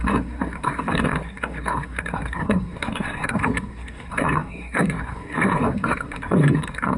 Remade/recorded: remade